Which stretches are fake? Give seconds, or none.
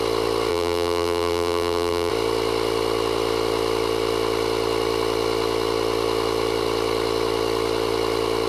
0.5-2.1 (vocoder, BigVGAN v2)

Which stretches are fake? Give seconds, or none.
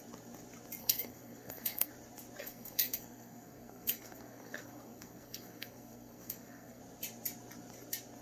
0.8-1.9 (codec, SNAC); 2.4-6.8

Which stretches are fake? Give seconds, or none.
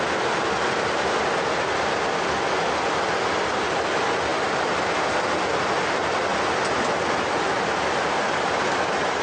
none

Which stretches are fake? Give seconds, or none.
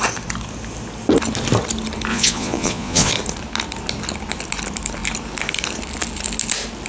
2.1-3.1 (vocoder, Vocos)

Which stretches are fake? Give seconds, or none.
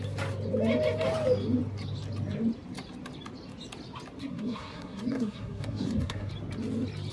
4.2-6.3 (codec, SNAC)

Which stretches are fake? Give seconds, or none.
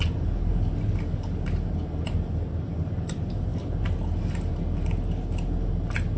none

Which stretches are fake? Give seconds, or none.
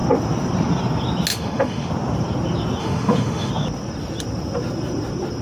1.3-1.9 (autoencoder, DAC-VAE); 2.8-3.5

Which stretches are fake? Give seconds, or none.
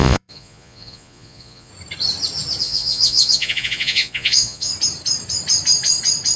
0.0-1.7 (vocoder, Vocos); 2.6-4.7